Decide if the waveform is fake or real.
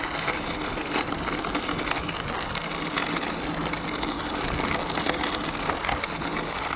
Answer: real